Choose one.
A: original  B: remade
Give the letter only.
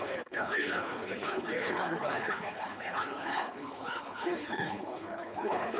B